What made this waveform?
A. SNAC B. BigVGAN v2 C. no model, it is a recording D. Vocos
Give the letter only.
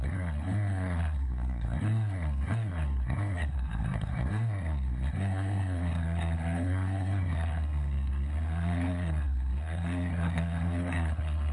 A